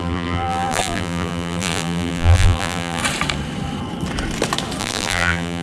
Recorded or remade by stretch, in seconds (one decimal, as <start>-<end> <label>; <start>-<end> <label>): 0.0-3.0 remade; 3.0-4.8 recorded; 4.8-5.6 remade